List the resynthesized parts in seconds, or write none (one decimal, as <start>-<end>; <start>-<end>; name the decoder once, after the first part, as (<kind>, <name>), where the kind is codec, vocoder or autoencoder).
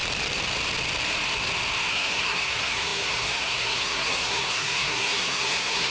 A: 1.9-5.9 (codec, SNAC)